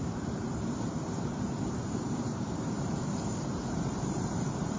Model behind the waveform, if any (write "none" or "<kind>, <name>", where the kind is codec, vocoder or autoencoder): vocoder, BigVGAN v2